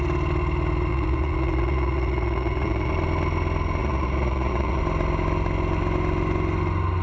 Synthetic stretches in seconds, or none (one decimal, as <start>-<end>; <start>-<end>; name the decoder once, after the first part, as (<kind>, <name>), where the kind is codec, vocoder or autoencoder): 0.9-2.9 (vocoder, Vocos); 3.8-4.8